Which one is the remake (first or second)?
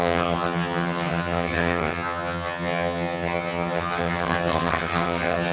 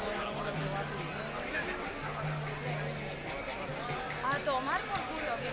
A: first